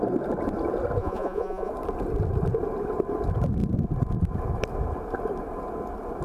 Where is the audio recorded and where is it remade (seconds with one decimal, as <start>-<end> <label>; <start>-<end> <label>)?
0.0-1.0 recorded; 1.0-1.7 remade; 1.7-6.2 recorded